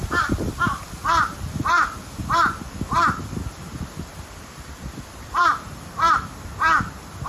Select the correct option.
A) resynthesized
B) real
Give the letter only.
A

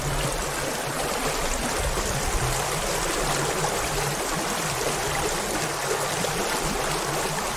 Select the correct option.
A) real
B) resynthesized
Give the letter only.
A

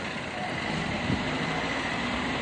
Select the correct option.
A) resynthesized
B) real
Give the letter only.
A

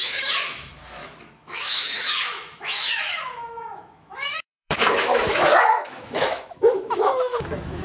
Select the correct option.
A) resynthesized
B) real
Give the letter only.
A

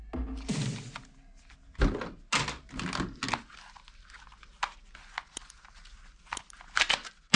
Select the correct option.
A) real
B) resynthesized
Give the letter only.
A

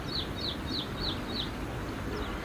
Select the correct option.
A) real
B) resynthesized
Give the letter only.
A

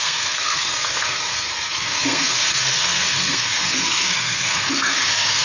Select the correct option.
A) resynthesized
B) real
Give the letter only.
A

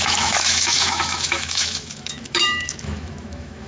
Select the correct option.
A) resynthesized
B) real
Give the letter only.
A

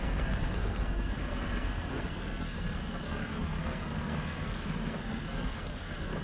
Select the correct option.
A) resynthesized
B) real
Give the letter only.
A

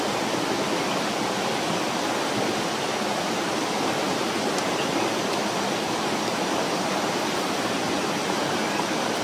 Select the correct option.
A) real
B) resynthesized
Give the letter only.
A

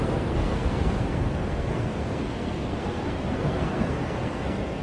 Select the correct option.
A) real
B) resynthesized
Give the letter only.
B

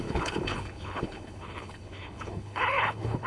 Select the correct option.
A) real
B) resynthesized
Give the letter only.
B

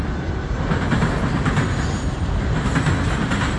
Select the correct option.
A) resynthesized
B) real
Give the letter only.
B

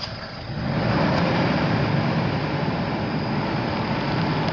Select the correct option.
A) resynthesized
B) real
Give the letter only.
B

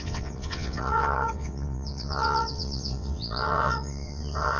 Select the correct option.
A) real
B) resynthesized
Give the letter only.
B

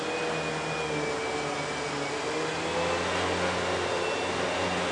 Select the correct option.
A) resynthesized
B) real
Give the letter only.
B